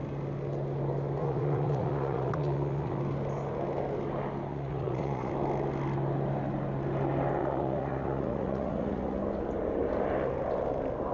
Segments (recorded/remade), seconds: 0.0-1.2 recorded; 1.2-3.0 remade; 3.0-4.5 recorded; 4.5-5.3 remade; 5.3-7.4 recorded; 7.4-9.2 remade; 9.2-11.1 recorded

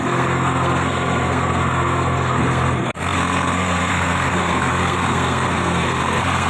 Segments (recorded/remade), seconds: 0.0-6.5 remade

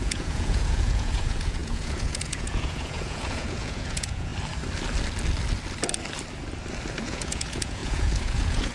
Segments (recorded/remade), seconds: 0.0-4.3 remade; 4.3-7.0 recorded; 7.0-8.7 remade

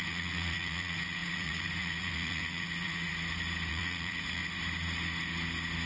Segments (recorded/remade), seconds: 0.0-3.1 remade; 3.1-3.7 recorded; 3.7-4.4 remade; 4.4-5.9 recorded

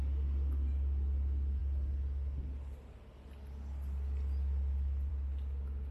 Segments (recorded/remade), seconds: 0.0-5.9 recorded

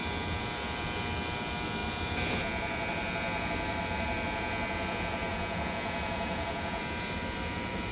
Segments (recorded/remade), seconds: 0.0-5.3 recorded; 5.3-6.8 remade; 6.8-7.9 recorded

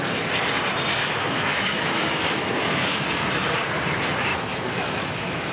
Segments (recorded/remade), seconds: 0.0-1.0 recorded; 1.0-3.0 remade; 3.0-4.3 recorded; 4.3-5.1 remade; 5.1-5.5 recorded

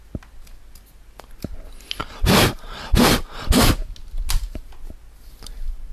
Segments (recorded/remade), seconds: 0.0-2.0 recorded; 2.0-3.9 remade; 3.9-5.9 recorded